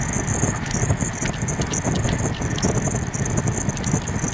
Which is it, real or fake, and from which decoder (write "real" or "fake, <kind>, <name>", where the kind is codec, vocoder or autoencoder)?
real